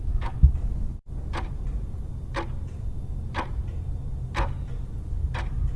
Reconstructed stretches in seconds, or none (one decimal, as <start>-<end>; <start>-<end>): none